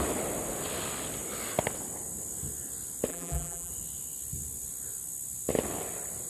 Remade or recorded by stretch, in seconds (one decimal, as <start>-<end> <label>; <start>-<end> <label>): 0.0-3.1 recorded; 3.1-3.7 remade; 3.7-6.3 recorded